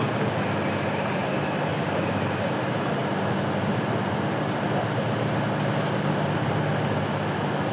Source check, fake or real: real